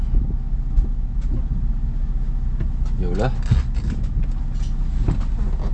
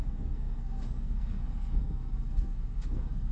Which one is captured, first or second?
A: first